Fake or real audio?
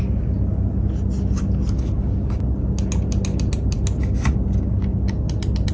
real